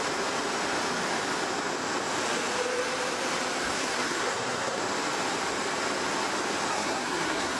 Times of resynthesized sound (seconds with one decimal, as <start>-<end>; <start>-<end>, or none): 3.7-4.8; 6.7-7.6